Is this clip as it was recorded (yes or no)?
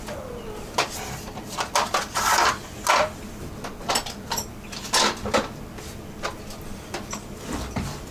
yes